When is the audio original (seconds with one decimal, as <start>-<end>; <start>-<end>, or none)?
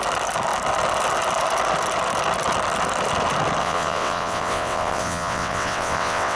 0.0-3.6